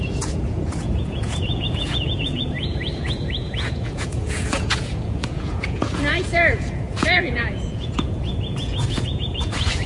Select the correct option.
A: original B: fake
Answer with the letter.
B